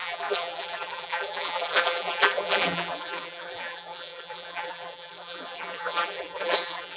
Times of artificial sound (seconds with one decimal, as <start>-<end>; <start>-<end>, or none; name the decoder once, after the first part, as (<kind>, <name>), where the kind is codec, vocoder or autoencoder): 0.0-7.0 (vocoder, BigVGAN v2)

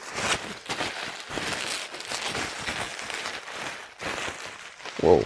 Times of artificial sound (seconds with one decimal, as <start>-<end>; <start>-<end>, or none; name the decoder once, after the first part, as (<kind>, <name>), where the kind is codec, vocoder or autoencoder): none